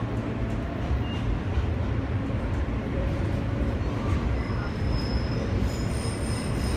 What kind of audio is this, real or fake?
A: fake